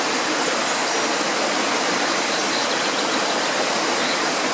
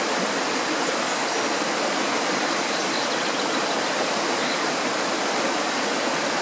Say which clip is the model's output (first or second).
second